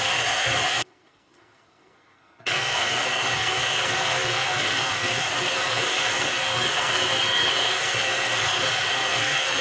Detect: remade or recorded remade